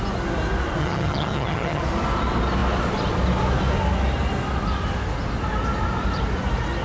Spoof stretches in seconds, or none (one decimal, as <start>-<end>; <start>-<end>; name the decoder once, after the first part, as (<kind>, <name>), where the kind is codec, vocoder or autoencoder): 0.8-1.8 (vocoder, HiFi-GAN)